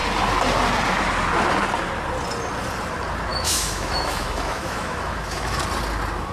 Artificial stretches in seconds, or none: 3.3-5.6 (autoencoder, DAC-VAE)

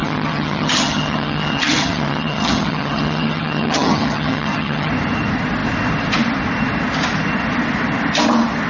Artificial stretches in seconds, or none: 0.0-4.9 (vocoder, HiFi-GAN)

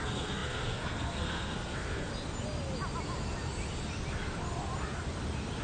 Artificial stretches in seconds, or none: 0.0-2.1 (codec, SNAC)